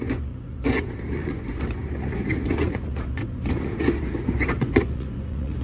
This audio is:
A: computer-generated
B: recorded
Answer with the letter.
A